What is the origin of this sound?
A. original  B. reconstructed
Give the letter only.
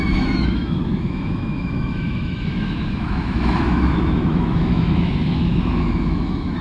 B